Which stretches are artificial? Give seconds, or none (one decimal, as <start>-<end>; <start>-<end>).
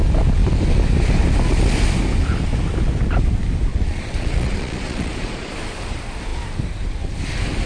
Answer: 3.7-5.5